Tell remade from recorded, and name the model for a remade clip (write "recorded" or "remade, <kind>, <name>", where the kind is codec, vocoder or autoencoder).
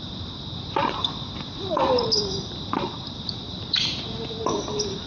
recorded